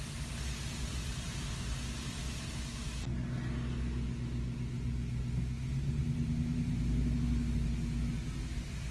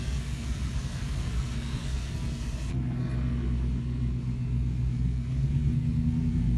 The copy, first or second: second